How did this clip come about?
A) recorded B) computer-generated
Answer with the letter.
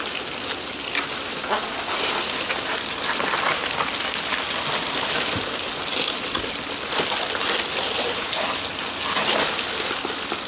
A